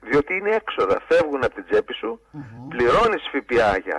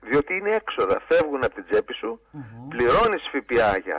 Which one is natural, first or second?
second